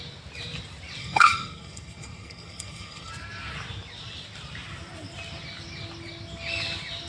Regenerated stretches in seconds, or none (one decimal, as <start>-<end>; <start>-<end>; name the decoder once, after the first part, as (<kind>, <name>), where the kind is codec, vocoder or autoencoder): 1.0-3.1 (codec, SNAC)